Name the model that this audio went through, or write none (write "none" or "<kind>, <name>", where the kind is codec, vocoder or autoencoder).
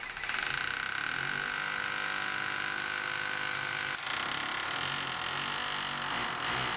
none